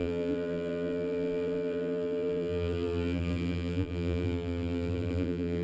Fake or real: fake